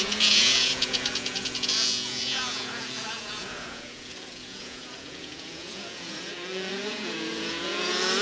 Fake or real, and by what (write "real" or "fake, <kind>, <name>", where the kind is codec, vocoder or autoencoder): fake, vocoder, Vocos